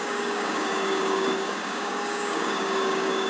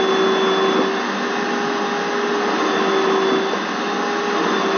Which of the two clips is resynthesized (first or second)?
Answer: first